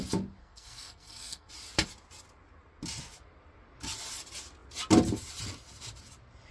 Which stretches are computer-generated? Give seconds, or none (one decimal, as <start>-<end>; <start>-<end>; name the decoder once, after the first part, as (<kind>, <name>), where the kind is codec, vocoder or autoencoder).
0.4-1.5 (codec, SNAC)

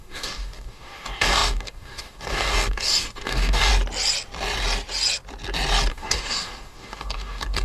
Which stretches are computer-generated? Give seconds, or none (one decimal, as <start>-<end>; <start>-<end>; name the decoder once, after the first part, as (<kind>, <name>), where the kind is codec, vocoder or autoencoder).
0.0-3.7 (codec, DAC); 5.9-7.6